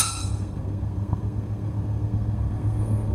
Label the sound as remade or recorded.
remade